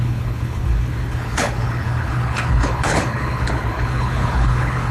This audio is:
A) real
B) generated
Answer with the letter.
B